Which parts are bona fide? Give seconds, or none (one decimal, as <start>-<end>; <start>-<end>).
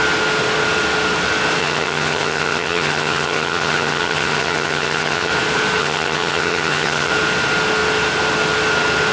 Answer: 0.0-1.6; 5.3-5.8; 7.1-9.1